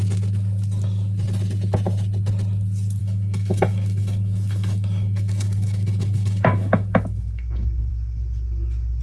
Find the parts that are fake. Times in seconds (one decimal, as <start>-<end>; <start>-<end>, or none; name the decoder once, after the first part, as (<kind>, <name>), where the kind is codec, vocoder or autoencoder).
3.0-7.9 (autoencoder, DAC-VAE)